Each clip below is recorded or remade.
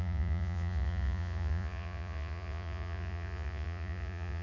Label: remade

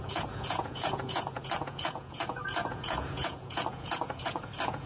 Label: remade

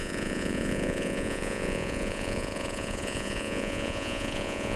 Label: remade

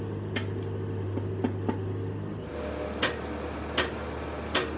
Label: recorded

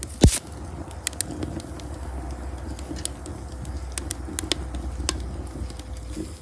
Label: recorded